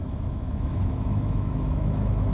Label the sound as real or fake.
fake